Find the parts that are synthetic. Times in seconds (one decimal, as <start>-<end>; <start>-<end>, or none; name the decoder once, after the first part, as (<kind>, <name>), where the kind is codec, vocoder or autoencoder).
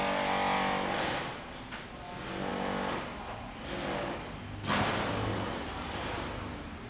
none